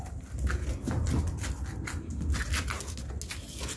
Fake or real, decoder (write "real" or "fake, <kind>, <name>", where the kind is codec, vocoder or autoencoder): real